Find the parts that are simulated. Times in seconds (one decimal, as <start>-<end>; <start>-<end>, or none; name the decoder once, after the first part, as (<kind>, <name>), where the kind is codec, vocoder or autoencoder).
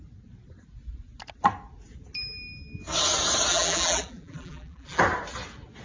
3.5-5.0 (vocoder, BigVGAN v2)